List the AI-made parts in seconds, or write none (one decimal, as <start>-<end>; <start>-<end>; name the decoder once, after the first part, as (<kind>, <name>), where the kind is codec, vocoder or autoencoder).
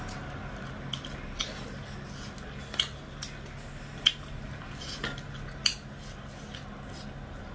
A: none